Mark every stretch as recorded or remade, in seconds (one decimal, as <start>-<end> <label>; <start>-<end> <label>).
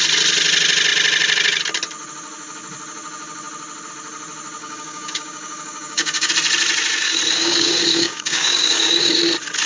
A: 0.0-4.6 recorded; 4.6-6.3 remade; 6.3-7.4 recorded; 7.4-9.2 remade; 9.2-9.7 recorded